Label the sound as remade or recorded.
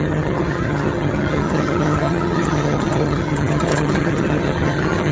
remade